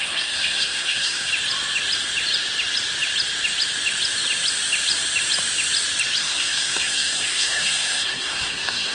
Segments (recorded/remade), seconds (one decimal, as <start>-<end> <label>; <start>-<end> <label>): 0.0-1.3 remade; 1.3-6.2 recorded; 6.2-8.9 remade